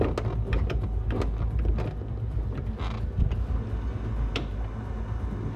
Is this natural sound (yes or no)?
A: yes